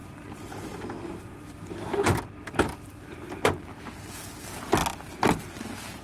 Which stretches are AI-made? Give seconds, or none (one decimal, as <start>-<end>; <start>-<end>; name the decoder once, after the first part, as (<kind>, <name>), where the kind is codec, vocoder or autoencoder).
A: none